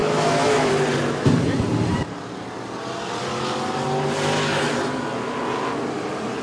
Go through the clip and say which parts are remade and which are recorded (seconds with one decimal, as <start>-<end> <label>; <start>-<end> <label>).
0.0-0.7 remade; 0.7-6.4 recorded